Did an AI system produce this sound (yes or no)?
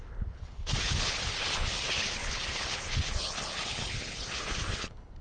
yes